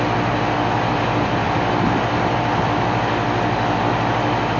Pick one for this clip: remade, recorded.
recorded